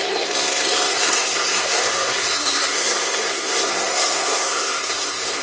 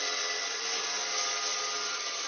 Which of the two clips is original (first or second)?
second